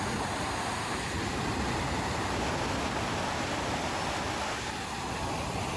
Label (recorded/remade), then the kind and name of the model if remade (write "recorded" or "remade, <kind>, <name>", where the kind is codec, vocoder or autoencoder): recorded